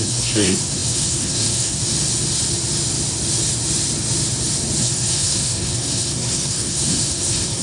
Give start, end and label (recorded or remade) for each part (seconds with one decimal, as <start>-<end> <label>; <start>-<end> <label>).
0.0-1.8 remade; 1.8-4.8 recorded; 4.8-7.6 remade